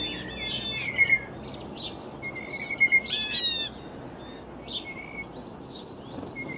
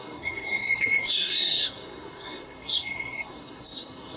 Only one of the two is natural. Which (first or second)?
first